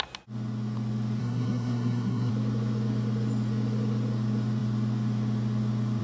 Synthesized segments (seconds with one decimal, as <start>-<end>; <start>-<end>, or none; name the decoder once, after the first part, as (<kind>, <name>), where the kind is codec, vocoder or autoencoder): 1.2-2.3 (codec, SNAC)